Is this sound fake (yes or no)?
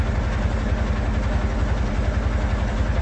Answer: no